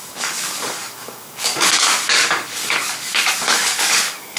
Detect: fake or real fake